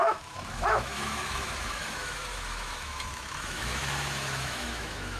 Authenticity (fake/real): fake